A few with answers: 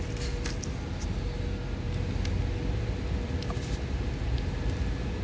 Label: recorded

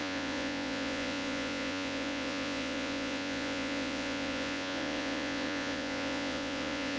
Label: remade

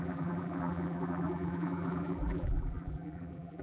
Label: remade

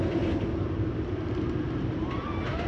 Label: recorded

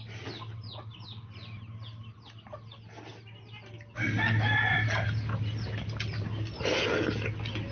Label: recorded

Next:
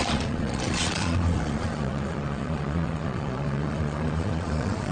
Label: remade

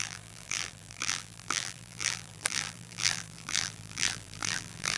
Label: remade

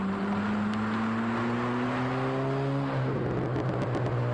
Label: recorded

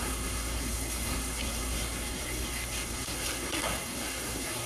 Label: remade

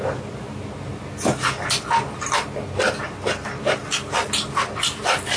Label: recorded